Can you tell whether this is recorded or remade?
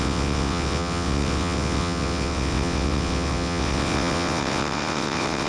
remade